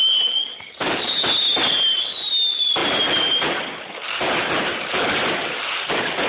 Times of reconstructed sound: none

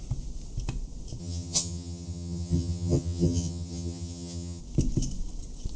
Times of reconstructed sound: 1.2-4.6 (vocoder, HiFi-GAN)

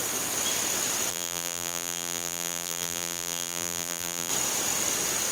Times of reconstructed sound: 1.1-4.3 (vocoder, BigVGAN v2)

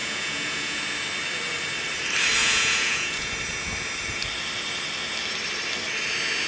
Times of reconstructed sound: 0.0-0.8 (vocoder, Vocos); 2.4-3.3

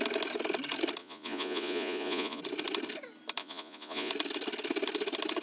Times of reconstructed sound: 1.0-2.4 (vocoder, Vocos); 3.4-4.1

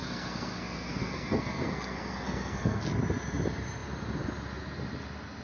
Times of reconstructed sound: 0.0-2.8 (codec, SNAC)

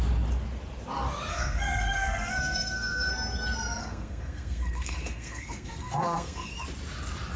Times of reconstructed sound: 1.3-3.1 (codec, SNAC); 3.8-6.5

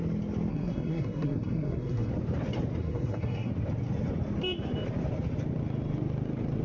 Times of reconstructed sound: 0.5-2.1 (codec, SNAC); 2.8-3.5